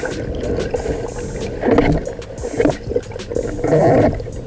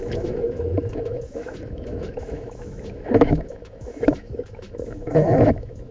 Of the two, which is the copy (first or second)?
second